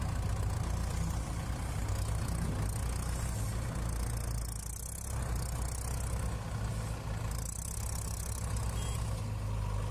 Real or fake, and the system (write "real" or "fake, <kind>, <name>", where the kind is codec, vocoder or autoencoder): real